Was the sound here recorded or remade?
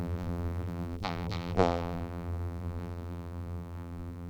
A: remade